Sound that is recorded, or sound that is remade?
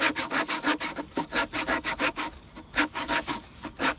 remade